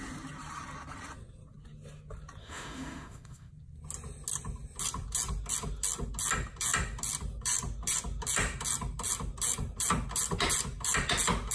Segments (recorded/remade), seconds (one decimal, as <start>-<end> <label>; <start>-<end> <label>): 0.0-2.4 recorded; 2.4-3.5 remade; 3.5-11.5 recorded